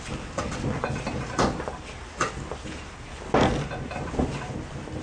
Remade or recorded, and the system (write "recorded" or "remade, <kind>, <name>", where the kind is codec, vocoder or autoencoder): recorded